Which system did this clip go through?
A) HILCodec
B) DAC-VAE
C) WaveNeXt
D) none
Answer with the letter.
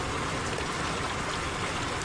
D